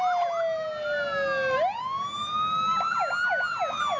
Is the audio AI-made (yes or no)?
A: no